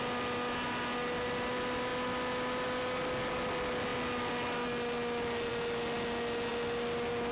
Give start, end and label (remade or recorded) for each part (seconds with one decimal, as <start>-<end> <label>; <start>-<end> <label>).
0.0-7.3 recorded